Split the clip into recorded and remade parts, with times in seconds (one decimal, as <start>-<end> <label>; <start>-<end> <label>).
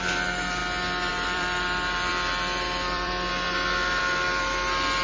0.0-0.6 remade; 0.6-1.1 recorded; 1.1-5.0 remade